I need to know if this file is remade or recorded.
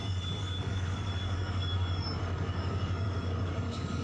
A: remade